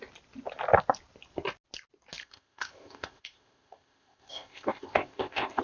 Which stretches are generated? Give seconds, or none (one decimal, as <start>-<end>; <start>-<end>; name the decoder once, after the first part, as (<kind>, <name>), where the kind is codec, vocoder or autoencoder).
2.2-5.6 (codec, ZipCodec)